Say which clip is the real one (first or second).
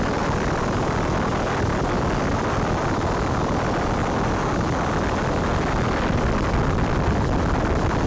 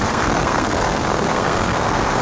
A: first